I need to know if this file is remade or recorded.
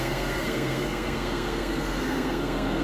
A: remade